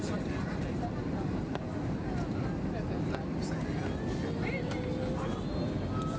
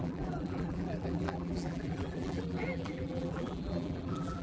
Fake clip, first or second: second